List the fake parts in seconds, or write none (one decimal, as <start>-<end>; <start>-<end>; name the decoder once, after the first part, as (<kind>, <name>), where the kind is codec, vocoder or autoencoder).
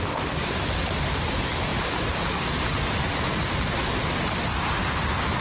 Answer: none